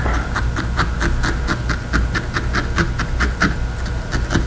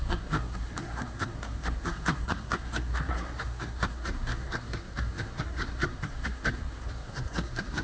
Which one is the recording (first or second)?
first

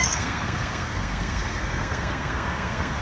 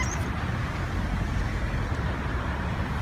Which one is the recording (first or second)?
second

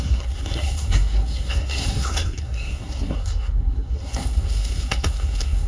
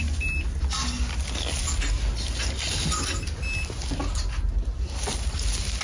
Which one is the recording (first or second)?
second